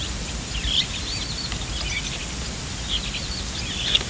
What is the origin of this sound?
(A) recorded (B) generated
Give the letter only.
A